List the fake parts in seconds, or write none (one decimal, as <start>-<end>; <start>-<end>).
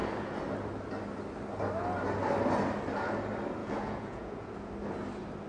3.6-4.7